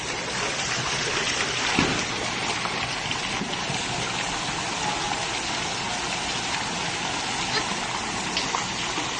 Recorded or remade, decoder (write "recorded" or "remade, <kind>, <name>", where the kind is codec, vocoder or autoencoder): recorded